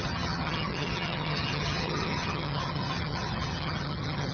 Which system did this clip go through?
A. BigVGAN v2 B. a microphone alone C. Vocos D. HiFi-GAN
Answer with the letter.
D